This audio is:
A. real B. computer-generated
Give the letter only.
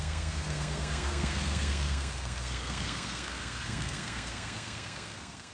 B